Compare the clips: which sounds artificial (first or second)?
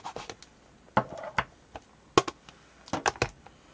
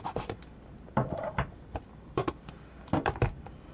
second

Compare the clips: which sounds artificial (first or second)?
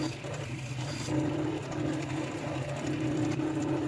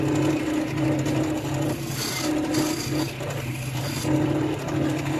first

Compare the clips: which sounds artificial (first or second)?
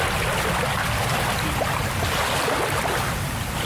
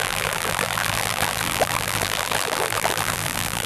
second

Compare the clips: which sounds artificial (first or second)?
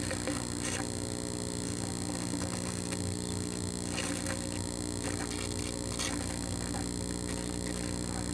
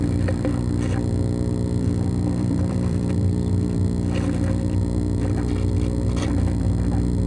second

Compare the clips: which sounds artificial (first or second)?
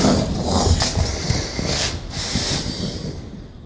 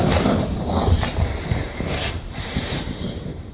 second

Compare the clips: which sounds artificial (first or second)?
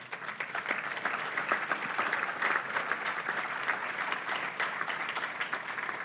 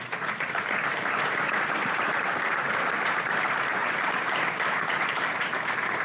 second